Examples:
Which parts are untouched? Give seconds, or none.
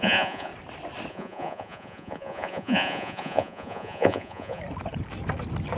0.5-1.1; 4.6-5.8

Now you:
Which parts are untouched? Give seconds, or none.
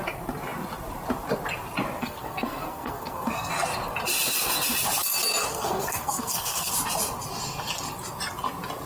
0.0-2.0; 3.5-5.5; 6.7-8.9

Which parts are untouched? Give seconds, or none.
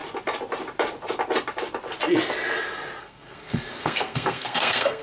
0.0-3.0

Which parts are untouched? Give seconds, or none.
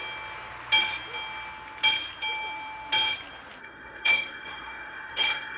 0.0-3.6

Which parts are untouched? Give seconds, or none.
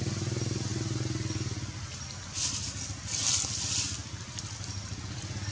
0.0-5.5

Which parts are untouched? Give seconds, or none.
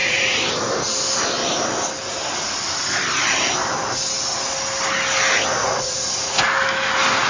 0.5-5.6; 6.4-7.3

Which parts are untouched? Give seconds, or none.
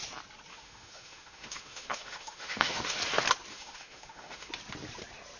0.0-0.5; 3.0-3.5; 4.5-5.4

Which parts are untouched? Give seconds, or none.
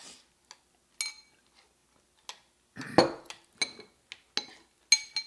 0.0-5.3